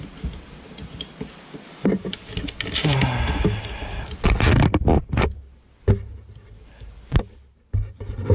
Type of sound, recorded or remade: recorded